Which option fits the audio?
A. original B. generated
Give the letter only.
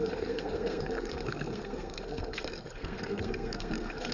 B